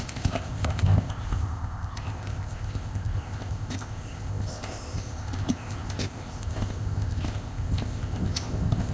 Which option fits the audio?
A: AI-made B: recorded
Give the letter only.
A